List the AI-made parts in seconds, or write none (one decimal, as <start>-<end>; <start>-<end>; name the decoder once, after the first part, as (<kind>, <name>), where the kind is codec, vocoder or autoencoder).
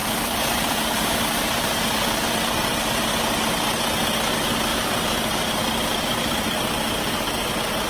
0.0-3.1 (vocoder, BigVGAN v2); 4.7-6.6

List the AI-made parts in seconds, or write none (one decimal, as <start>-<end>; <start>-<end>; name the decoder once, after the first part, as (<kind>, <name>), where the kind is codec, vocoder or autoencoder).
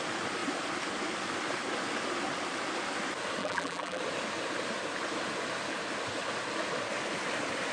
3.4-4.0 (vocoder, BigVGAN v2)